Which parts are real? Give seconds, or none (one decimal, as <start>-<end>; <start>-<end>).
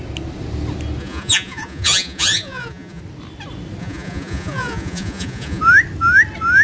0.0-1.0; 3.0-3.8; 5.6-6.6